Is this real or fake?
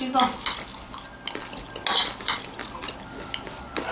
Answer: real